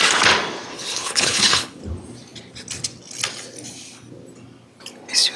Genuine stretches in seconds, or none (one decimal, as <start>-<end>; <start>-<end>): 0.0-0.7; 1.8-5.4